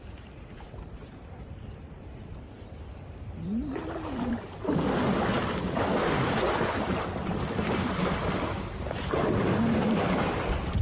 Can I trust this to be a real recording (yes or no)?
no